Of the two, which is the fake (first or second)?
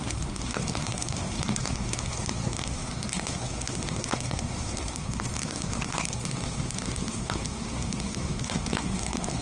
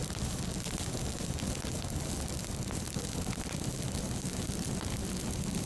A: first